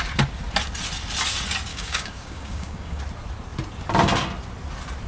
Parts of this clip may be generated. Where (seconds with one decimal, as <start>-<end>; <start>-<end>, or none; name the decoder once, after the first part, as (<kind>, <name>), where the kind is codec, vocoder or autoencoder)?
1.7-3.0 (codec, DAC)